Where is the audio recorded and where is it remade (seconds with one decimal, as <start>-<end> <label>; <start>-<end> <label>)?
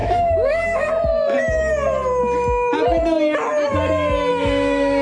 0.0-0.9 remade; 0.9-4.3 recorded; 4.3-5.0 remade